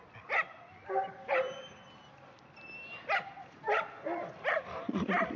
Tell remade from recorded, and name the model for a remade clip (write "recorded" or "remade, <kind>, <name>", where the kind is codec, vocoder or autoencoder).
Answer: recorded